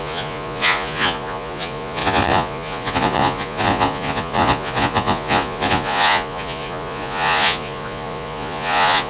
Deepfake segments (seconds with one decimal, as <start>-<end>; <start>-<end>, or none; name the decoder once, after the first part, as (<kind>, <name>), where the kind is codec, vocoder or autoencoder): 0.0-9.1 (vocoder, Vocos)